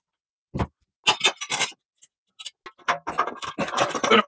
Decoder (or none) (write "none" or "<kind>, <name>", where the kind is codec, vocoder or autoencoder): none